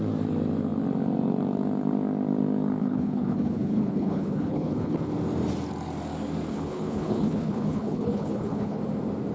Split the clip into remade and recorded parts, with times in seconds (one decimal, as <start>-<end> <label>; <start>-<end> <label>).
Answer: 0.0-2.8 recorded; 2.8-5.1 remade; 5.1-6.5 recorded; 6.5-8.8 remade; 8.8-9.3 recorded